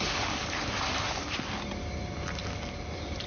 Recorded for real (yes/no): yes